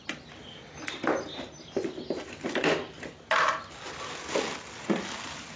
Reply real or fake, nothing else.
real